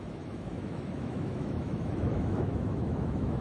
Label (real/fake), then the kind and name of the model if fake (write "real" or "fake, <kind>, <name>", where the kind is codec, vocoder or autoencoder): fake, autoencoder, DAC-VAE